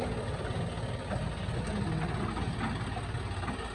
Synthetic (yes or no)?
no